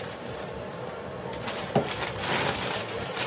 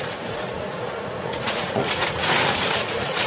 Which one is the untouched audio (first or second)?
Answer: first